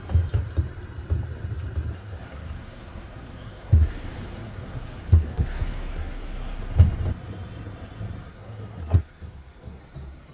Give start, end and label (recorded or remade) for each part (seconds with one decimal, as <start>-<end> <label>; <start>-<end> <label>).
0.0-1.9 recorded; 1.9-6.6 remade; 6.6-8.3 recorded; 8.3-9.8 remade; 9.8-10.3 recorded